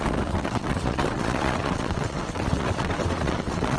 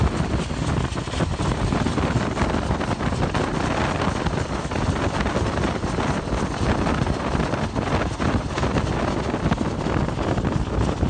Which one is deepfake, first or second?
first